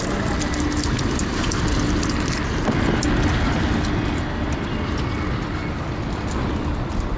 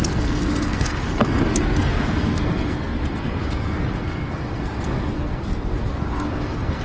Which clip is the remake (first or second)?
second